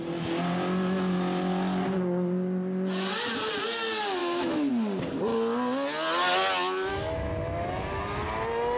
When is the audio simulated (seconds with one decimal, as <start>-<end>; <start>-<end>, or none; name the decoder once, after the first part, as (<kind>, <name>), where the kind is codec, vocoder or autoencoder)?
4.2-4.7 (autoencoder, DAC-VAE); 6.9-8.2